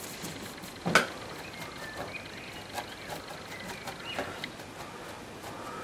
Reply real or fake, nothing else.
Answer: real